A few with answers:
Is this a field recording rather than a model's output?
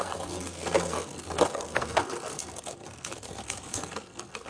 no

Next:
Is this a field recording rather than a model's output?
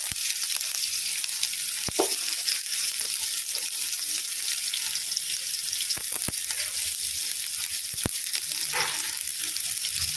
no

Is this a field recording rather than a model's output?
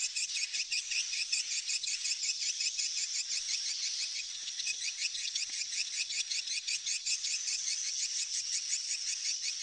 no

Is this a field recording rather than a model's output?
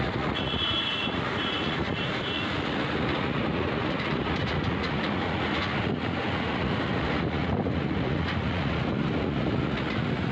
no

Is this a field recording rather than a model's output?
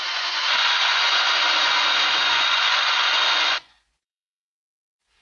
no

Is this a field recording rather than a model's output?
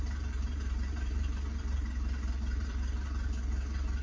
no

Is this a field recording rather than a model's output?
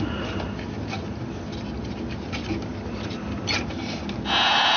yes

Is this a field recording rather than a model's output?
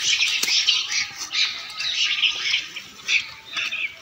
yes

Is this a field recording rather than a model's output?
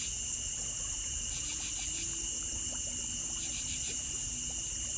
yes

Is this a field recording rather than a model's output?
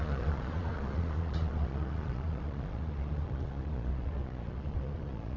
no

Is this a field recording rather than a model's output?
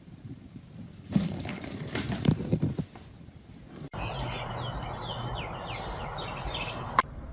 no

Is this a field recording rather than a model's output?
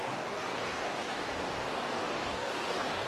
no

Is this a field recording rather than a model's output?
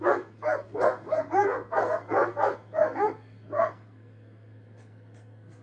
no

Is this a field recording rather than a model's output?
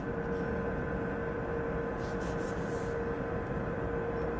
yes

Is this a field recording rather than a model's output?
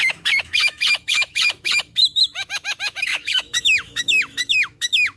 no